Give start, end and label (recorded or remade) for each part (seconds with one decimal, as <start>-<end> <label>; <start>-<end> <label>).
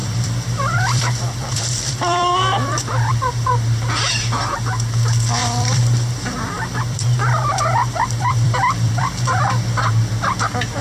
0.0-2.3 remade; 2.3-5.4 recorded; 5.4-9.8 remade; 9.8-10.8 recorded